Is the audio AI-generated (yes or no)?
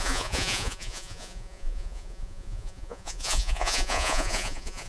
yes